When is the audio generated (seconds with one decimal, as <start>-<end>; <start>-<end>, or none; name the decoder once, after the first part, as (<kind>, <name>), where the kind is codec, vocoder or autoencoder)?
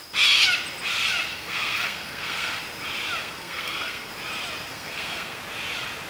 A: 1.3-2.6 (codec, SNAC); 3.2-4.1; 4.7-5.4